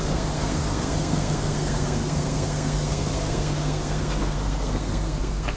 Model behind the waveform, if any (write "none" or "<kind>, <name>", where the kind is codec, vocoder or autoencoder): codec, SNAC